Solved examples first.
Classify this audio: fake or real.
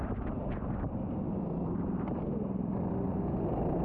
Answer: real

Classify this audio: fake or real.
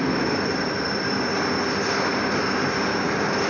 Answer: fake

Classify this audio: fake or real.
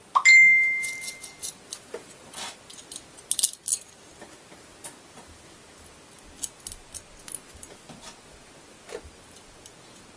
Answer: real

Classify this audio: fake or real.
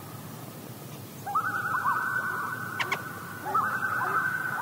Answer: real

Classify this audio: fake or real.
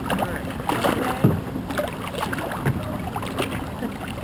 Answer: real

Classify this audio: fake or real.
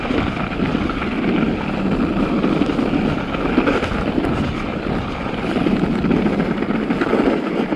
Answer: real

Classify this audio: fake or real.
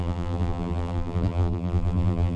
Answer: fake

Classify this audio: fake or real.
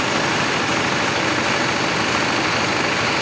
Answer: real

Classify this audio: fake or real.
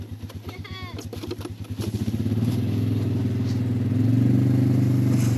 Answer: real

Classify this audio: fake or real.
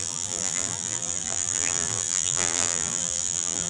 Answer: fake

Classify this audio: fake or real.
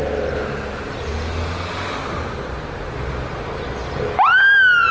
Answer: real